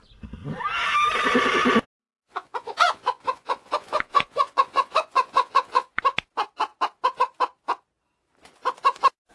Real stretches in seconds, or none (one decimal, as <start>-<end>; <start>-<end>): 0.0-2.0; 5.9-9.3